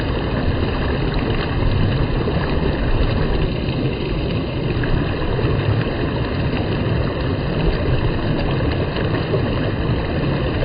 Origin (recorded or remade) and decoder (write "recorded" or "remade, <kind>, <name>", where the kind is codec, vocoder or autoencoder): recorded